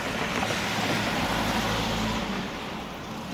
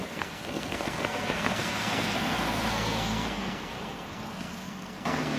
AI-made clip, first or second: second